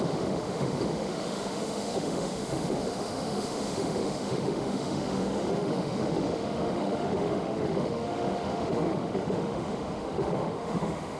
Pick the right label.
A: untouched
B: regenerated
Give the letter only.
B